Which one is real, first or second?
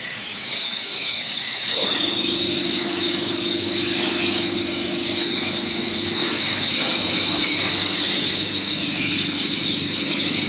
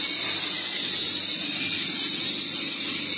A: second